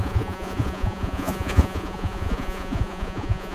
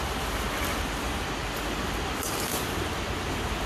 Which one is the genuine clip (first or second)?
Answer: second